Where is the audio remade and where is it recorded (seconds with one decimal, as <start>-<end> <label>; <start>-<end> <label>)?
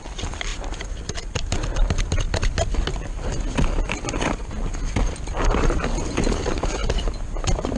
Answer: 0.0-7.8 recorded